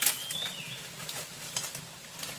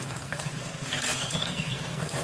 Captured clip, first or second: first